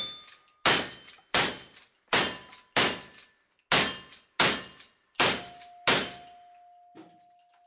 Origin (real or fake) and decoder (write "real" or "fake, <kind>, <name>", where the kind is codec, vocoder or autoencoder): real